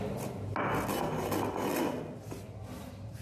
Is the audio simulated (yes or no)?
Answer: no